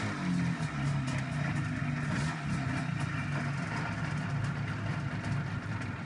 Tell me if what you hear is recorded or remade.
recorded